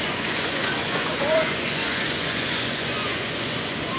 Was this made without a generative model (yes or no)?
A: no